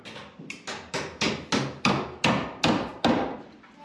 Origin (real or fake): real